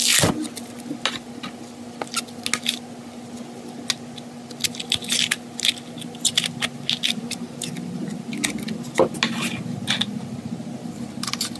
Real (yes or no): yes